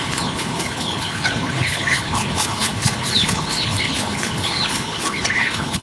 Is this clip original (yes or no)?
no